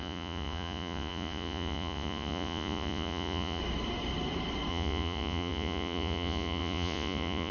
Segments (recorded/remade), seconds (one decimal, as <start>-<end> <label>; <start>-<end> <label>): 0.0-3.6 remade; 3.6-4.7 recorded; 4.7-7.5 remade